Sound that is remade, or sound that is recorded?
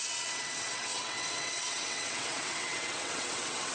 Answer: remade